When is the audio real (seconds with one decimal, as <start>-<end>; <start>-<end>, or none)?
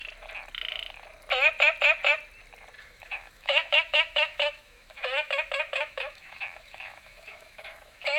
0.0-2.8